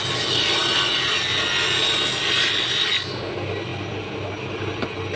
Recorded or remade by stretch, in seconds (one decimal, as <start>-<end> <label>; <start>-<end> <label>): 0.0-5.2 recorded